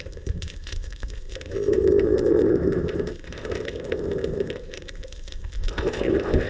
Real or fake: fake